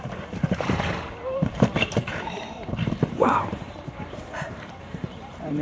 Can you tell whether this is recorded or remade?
remade